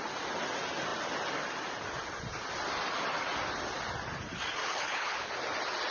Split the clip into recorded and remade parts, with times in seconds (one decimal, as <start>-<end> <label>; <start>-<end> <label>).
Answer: 0.0-4.6 recorded; 4.6-5.3 remade; 5.3-5.9 recorded